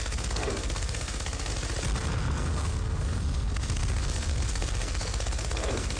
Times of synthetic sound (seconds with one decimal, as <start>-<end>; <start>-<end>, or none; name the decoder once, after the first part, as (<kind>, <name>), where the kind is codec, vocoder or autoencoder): 0.0-1.5 (codec, SNAC); 2.0-6.0